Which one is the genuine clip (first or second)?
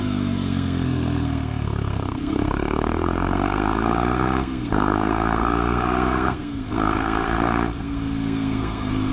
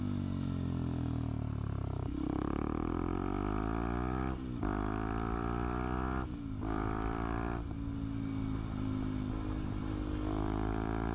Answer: second